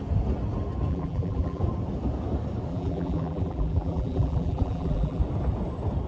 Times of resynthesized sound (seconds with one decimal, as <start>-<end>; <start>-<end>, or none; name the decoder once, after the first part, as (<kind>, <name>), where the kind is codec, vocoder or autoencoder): 0.9-1.6 (vocoder, BigVGAN v2); 2.7-5.2